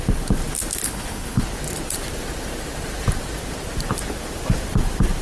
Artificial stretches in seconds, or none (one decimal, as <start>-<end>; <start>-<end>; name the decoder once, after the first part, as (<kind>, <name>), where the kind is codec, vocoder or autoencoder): 0.8-1.4 (codec, HILCodec)